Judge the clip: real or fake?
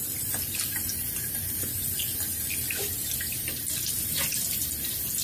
real